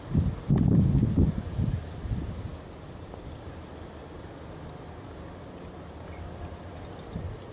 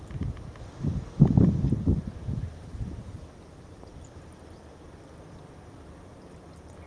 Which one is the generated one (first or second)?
second